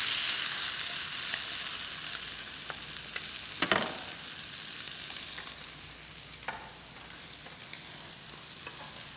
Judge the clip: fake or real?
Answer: real